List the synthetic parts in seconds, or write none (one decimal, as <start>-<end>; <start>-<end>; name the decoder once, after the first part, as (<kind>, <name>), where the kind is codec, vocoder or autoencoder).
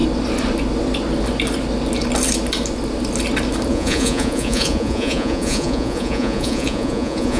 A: 3.7-7.4 (vocoder, Vocos)